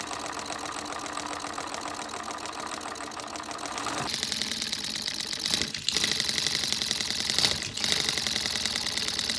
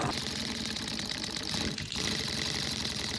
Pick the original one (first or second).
first